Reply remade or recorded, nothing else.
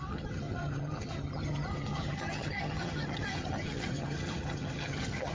remade